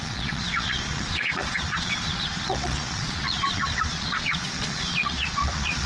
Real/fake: fake